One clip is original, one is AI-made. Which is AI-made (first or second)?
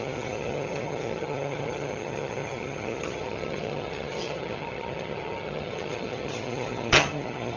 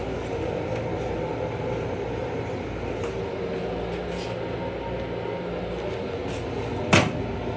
first